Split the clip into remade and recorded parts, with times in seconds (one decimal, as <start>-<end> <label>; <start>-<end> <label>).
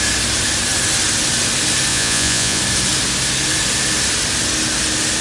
0.0-1.9 recorded; 1.9-2.6 remade; 2.6-5.2 recorded